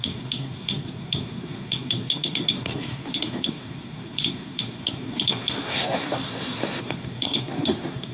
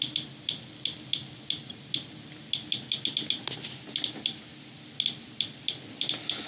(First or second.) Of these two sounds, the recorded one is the second